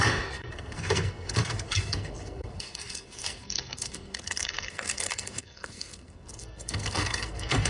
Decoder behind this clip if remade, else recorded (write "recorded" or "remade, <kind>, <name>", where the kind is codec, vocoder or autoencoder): remade, codec, SNAC